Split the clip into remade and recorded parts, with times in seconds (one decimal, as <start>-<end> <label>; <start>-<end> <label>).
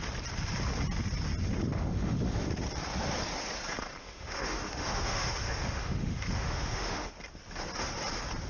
0.0-1.8 recorded; 1.8-2.5 remade; 2.5-4.0 recorded; 4.0-7.1 remade; 7.1-8.5 recorded